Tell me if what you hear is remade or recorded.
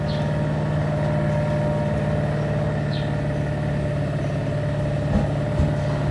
recorded